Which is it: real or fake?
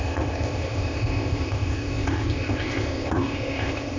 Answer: fake